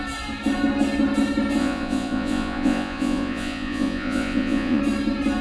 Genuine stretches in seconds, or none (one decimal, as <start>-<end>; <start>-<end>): 0.0-1.6; 4.8-5.4